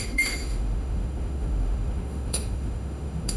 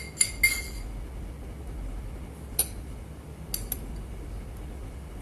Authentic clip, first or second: second